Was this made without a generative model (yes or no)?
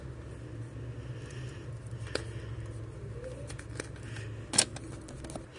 yes